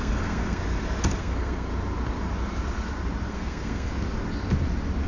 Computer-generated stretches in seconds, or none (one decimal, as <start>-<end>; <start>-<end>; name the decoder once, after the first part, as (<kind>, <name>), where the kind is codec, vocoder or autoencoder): 0.0-0.6 (codec, SNAC); 1.2-1.7; 3.3-3.9